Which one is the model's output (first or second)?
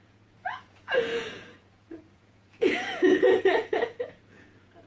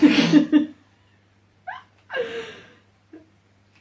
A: first